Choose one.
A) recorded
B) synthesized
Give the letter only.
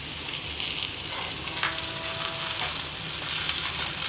A